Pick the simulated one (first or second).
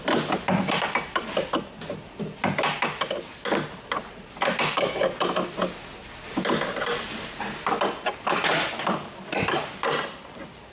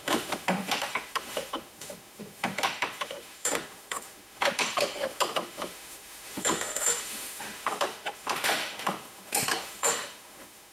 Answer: second